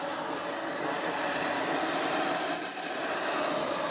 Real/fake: real